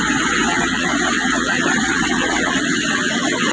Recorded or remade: remade